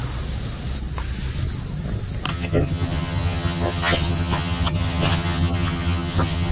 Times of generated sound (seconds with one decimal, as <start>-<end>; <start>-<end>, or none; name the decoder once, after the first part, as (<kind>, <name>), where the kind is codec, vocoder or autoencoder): 2.3-6.5 (vocoder, HiFi-GAN)